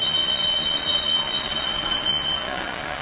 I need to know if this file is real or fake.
fake